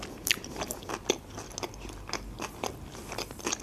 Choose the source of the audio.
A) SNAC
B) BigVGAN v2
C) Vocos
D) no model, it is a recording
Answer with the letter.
D